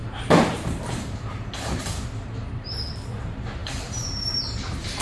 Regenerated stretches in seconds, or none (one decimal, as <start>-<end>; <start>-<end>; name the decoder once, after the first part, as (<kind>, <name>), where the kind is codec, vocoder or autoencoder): 0.0-1.8 (vocoder, BigVGAN v2); 3.6-5.0